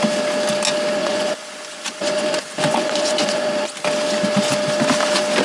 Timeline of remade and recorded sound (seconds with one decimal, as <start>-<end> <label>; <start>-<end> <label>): 0.0-1.0 recorded; 1.0-3.7 remade; 3.7-5.4 recorded